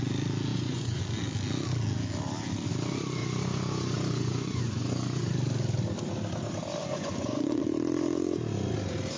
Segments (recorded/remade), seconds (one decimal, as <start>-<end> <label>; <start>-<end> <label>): 0.0-0.5 recorded; 0.5-1.0 remade; 1.0-3.2 recorded; 3.2-5.3 remade; 5.3-6.8 recorded; 6.8-7.6 remade; 7.6-9.2 recorded